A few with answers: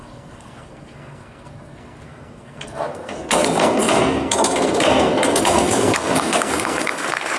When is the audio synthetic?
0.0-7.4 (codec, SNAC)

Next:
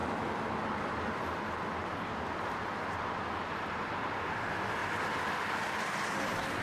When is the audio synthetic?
none